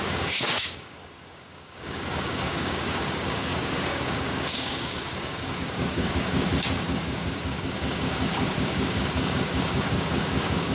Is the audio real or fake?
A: fake